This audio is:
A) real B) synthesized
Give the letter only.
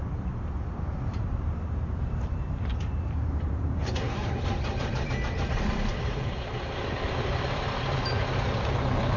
B